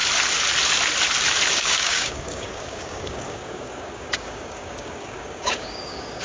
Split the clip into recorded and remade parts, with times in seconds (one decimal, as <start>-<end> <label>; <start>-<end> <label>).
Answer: 0.0-1.5 recorded; 1.5-6.2 remade